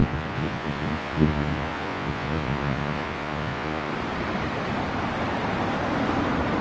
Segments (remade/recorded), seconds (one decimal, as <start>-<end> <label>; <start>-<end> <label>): 0.0-3.9 remade; 3.9-6.6 recorded